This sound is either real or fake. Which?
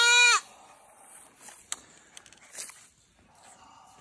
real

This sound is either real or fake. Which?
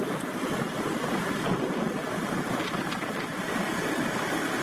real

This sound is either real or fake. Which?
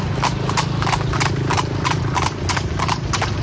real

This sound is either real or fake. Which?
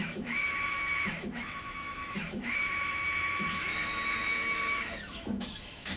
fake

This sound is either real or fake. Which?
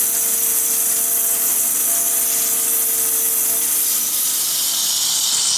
real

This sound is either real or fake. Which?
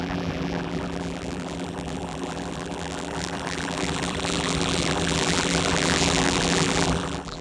fake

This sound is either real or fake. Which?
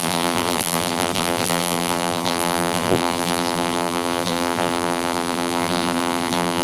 fake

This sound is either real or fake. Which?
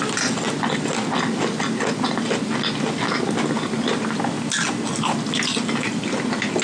real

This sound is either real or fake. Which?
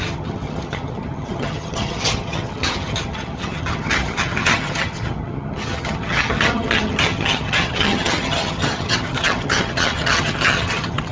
fake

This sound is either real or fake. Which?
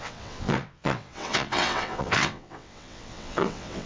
fake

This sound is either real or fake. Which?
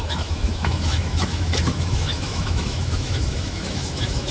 fake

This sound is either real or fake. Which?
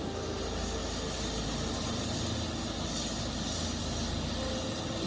real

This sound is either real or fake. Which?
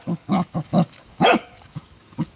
fake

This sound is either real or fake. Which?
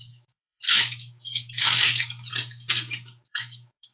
fake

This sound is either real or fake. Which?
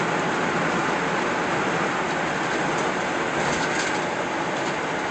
real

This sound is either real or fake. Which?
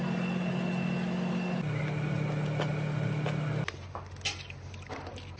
real